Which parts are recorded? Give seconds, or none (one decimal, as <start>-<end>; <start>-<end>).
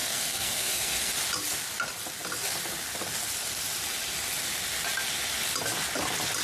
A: 1.1-6.4